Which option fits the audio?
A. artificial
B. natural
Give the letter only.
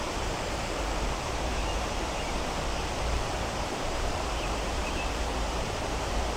A